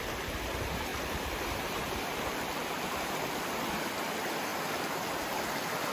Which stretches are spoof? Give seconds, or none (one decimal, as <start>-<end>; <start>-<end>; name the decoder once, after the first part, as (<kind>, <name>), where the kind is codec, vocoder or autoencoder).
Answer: 0.9-3.8 (vocoder, BigVGAN v2)